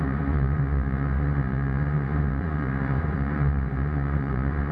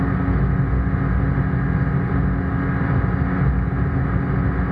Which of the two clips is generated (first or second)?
first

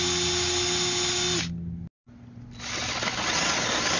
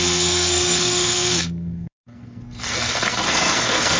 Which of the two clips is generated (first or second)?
second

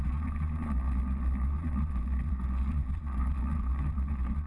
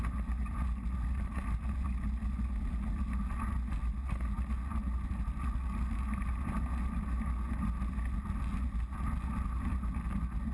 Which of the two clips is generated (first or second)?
first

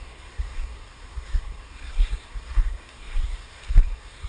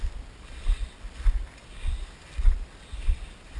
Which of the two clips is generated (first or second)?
first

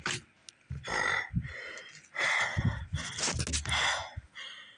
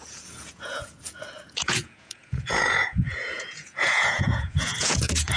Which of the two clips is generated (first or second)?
second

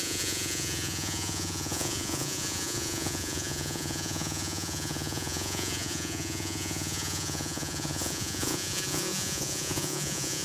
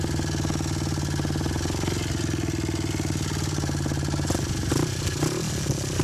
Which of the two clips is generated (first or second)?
first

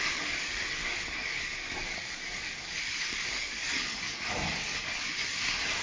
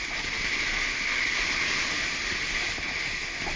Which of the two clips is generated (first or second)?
first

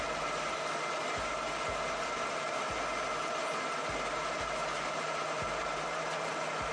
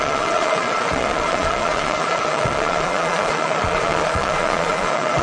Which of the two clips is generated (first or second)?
second